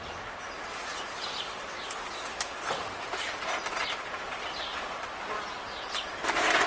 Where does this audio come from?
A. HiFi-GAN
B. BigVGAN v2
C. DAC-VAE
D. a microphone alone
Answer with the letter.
D